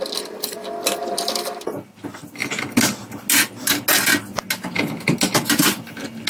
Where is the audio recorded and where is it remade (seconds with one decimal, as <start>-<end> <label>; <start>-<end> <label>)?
0.0-6.3 recorded